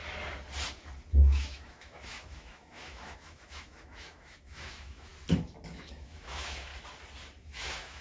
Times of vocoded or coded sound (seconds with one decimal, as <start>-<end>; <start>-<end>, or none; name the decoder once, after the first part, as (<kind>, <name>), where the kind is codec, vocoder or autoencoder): 1.1-5.1 (autoencoder, DAC-VAE); 5.7-6.7; 7.4-8.0